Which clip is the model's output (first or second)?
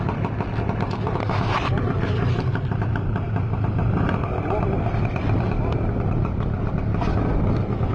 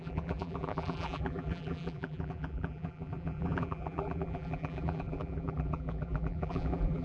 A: second